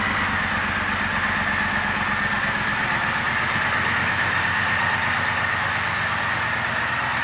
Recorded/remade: recorded